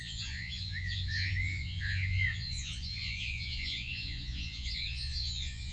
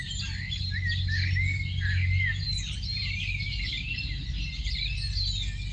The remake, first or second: first